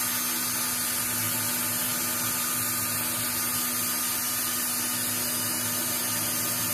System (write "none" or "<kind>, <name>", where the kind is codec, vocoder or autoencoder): none